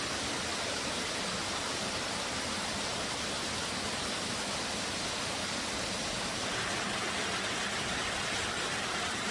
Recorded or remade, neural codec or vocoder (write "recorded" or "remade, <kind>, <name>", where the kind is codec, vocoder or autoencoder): recorded